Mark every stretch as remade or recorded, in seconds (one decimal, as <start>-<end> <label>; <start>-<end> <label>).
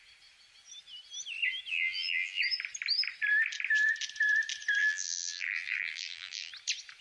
0.0-1.7 recorded; 1.7-2.4 remade; 2.4-4.8 recorded; 4.8-6.5 remade; 6.5-7.0 recorded